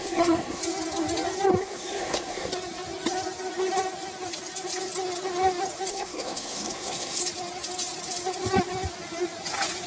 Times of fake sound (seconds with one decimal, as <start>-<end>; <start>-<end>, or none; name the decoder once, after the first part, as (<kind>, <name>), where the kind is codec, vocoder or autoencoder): 0.0-0.6 (codec, SNAC); 1.6-2.5; 5.9-7.2